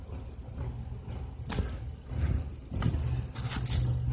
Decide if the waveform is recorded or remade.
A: recorded